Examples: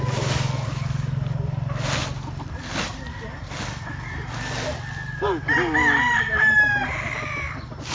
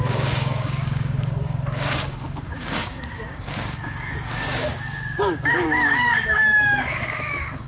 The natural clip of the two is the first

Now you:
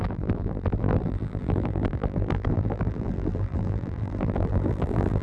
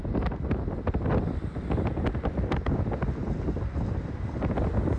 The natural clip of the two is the second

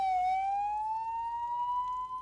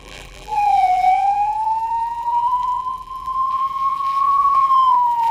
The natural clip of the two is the first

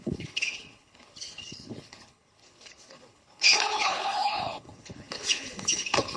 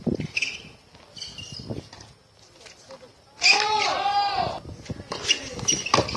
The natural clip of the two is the second